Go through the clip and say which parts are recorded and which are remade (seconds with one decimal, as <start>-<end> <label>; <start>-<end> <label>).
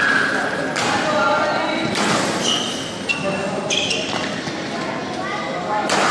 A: 0.0-6.1 recorded